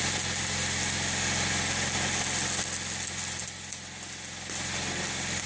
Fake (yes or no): no